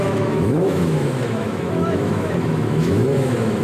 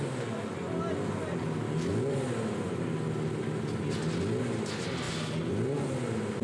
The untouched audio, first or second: second